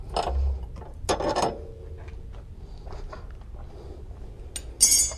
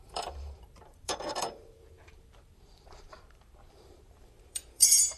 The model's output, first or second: second